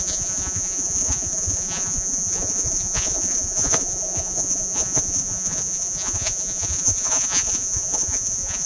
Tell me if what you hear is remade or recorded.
remade